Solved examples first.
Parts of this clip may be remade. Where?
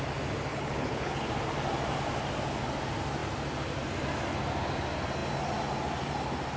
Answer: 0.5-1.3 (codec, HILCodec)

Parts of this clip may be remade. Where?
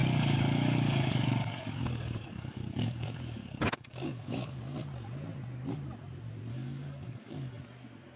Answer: 0.0-4.6 (codec, DAC); 6.5-7.6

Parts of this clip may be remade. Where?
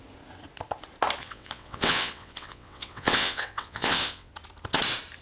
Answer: 1.2-4.3 (vocoder, WaveNeXt)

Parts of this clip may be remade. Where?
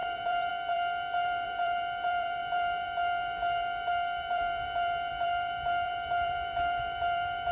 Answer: 0.0-7.5 (vocoder, BigVGAN v2)